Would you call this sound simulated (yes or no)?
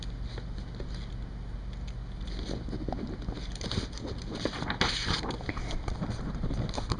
no